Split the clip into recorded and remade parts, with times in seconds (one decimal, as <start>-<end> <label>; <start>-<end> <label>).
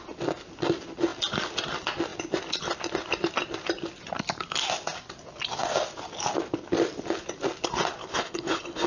0.0-8.0 recorded; 8.0-8.9 remade